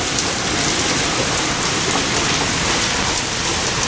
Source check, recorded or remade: recorded